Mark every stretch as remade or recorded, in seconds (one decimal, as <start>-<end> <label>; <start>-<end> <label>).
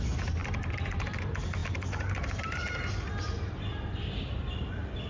0.0-5.1 recorded